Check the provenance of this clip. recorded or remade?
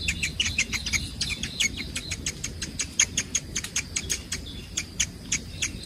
recorded